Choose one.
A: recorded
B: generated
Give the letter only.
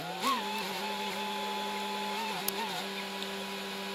A